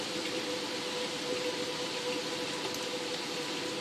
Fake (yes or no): no